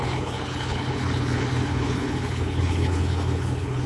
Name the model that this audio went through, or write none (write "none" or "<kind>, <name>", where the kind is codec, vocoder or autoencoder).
codec, HILCodec